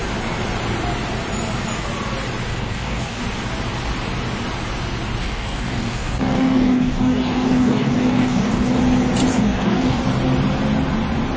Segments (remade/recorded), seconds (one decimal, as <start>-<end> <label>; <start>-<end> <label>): 0.0-2.5 recorded; 2.5-3.2 remade; 3.2-5.2 recorded; 5.2-8.8 remade; 8.8-9.3 recorded; 9.3-10.0 remade; 10.0-11.4 recorded

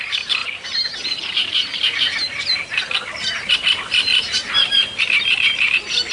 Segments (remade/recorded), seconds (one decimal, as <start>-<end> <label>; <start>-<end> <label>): 0.0-4.1 recorded; 4.1-5.0 remade; 5.0-6.1 recorded

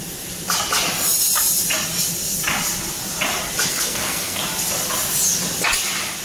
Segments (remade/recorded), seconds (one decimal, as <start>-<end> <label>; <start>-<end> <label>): 0.0-3.7 recorded; 3.7-4.4 remade; 4.4-6.2 recorded

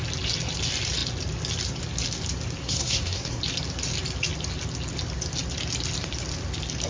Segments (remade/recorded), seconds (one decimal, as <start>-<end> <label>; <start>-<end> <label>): 0.0-2.6 recorded; 2.6-3.4 remade; 3.4-6.9 recorded

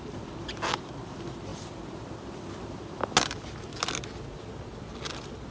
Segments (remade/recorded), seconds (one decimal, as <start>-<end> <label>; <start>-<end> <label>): 0.0-5.5 recorded

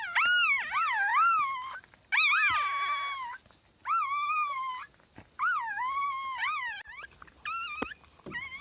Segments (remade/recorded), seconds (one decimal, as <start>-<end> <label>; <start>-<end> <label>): 0.0-8.6 recorded

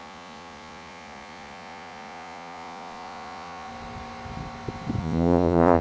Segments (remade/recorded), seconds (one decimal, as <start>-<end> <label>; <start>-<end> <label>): 0.0-3.7 remade; 3.7-5.0 recorded; 5.0-5.8 remade

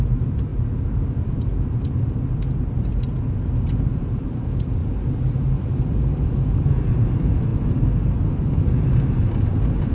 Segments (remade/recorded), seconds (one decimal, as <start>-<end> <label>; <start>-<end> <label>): 0.0-0.5 remade; 0.5-3.9 recorded; 3.9-4.8 remade; 4.8-5.8 recorded; 5.8-7.5 remade; 7.5-8.3 recorded; 8.3-9.9 remade